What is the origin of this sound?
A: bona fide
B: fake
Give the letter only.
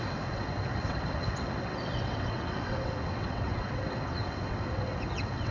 B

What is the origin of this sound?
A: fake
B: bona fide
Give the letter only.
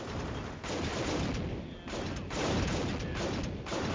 B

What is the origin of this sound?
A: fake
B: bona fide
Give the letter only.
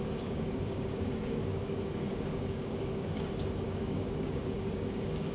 A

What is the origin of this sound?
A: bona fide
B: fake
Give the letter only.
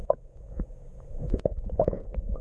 B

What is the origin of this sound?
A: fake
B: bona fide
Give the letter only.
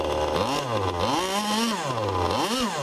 B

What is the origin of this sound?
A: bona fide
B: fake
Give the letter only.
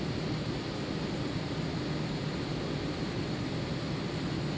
A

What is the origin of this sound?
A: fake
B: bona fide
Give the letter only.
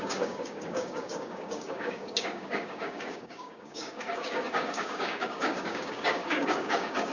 A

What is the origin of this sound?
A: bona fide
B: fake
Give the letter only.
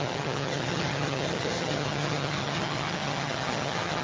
B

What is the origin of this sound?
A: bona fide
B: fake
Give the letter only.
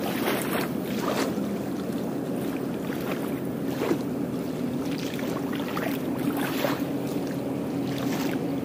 A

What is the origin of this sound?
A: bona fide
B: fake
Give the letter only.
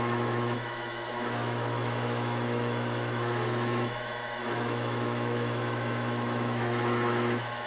B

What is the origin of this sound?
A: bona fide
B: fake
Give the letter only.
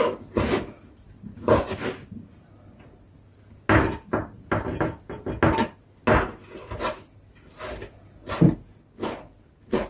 A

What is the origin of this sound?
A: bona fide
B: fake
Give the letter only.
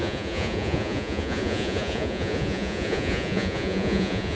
B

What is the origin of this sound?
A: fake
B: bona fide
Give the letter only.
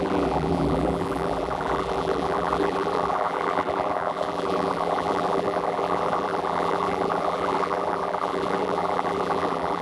A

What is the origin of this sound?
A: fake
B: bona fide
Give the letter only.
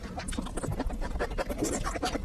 B